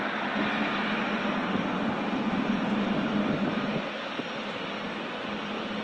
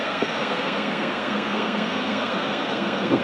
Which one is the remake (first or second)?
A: second